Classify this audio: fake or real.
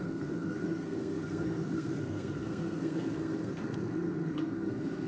fake